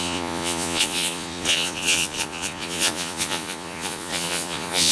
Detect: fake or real fake